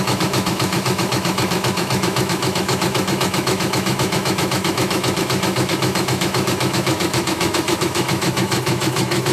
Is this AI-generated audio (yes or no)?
yes